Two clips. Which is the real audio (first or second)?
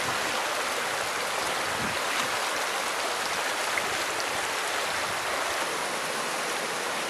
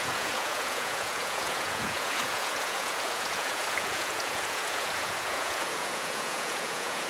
first